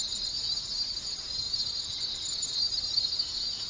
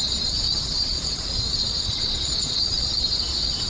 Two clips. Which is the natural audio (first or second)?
first